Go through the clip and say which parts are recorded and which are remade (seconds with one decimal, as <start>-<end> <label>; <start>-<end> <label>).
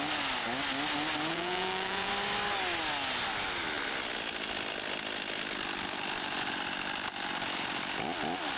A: 0.0-1.3 recorded; 1.3-2.1 remade; 2.1-8.6 recorded